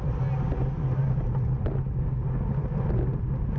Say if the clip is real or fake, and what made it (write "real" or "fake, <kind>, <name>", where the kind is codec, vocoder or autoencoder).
real